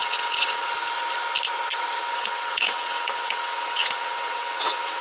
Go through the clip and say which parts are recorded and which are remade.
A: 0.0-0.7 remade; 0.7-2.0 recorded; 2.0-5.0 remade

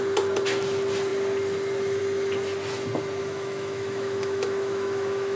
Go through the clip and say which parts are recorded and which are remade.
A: 0.0-3.2 recorded; 3.2-5.4 remade

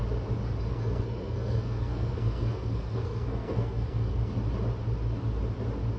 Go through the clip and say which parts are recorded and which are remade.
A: 0.0-0.7 recorded; 0.7-4.3 remade; 4.3-6.0 recorded

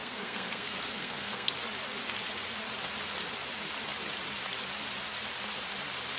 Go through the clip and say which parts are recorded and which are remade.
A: 0.0-1.5 remade; 1.5-6.2 recorded

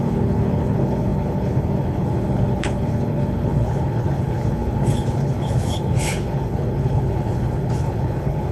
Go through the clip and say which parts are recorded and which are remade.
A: 0.0-8.5 remade

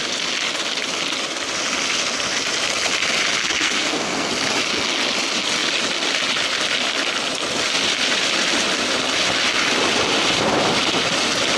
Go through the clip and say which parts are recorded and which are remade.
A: 0.0-3.4 recorded; 3.4-4.3 remade; 4.3-11.6 recorded

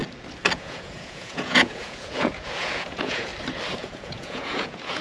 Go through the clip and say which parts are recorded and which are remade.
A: 0.0-0.6 recorded; 0.6-3.3 remade; 3.3-3.8 recorded; 3.8-5.0 remade